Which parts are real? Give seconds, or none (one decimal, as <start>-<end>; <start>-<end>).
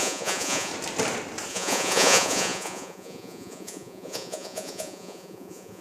0.7-1.5